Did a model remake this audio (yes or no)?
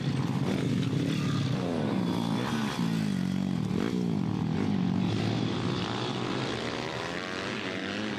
no